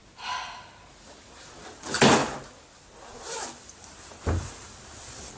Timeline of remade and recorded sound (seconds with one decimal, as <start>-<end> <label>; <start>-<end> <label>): 0.0-5.4 recorded